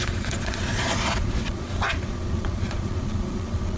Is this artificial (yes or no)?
yes